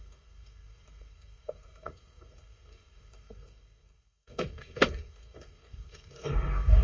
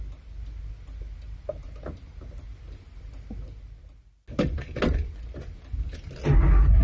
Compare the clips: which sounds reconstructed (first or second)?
first